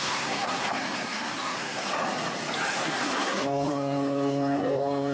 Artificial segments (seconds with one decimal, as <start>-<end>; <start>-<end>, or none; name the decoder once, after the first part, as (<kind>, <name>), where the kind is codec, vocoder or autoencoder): 0.0-1.9 (codec, SNAC); 2.7-5.1